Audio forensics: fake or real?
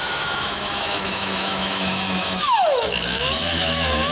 fake